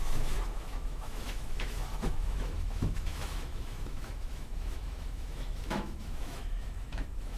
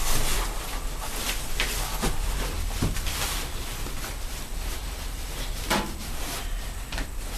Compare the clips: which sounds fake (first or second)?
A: first